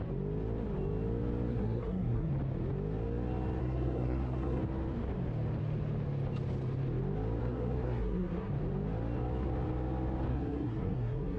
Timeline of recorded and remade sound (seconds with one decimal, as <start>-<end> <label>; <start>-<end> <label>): 0.0-1.5 recorded; 1.5-2.3 remade; 2.3-3.6 recorded; 3.6-4.6 remade; 4.6-7.4 recorded; 7.4-8.5 remade; 8.5-10.3 recorded; 10.3-11.4 remade